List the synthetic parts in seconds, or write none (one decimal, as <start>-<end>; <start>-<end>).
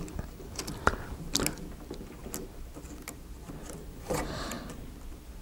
none